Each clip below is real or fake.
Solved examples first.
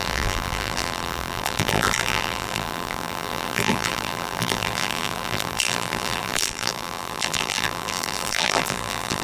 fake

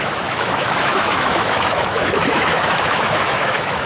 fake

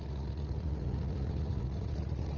fake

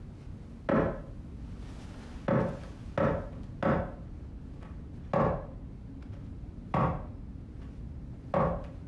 real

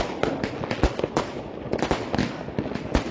real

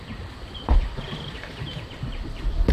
fake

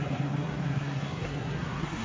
fake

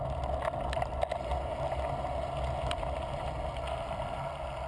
real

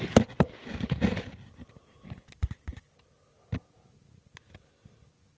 real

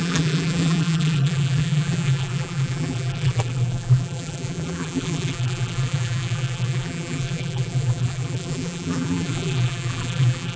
fake